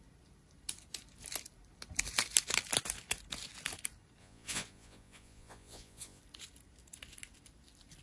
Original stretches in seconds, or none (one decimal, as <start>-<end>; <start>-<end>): 0.0-4.2; 6.2-8.0

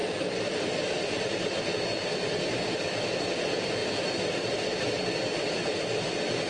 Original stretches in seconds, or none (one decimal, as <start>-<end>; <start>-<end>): 3.2-3.8; 5.0-6.5

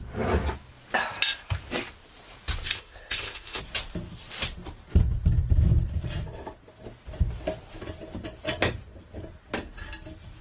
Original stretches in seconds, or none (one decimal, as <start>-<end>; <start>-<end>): 0.0-2.7; 3.6-10.4

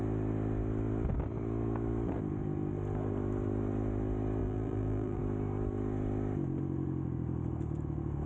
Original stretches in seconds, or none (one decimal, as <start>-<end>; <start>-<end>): 0.0-4.4; 5.2-8.3